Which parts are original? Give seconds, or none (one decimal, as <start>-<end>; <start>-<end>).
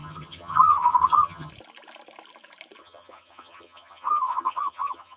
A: 1.5-2.8